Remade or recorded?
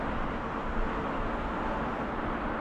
recorded